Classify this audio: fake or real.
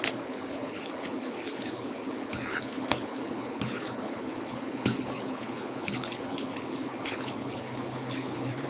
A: fake